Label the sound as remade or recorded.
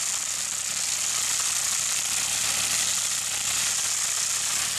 recorded